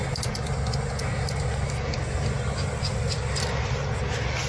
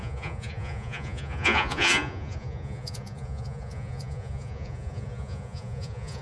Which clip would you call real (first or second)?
first